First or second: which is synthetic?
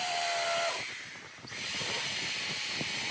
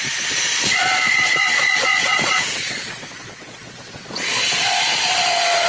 second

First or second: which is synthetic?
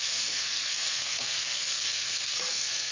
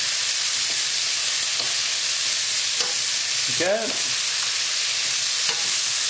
first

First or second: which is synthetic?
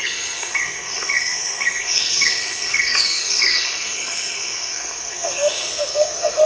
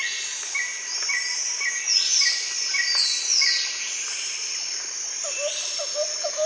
first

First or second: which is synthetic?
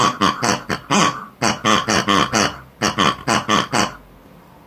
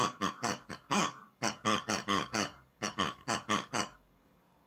second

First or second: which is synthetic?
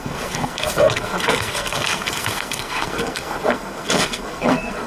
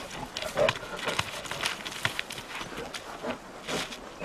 first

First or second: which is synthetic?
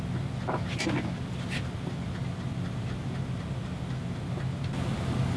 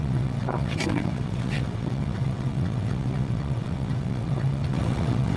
second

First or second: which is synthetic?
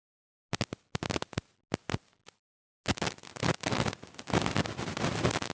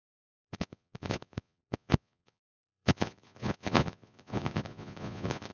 second